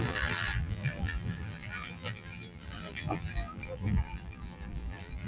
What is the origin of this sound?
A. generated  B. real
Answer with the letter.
A